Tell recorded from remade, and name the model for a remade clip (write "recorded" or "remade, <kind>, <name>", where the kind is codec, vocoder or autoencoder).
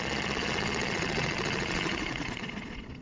remade, vocoder, Vocos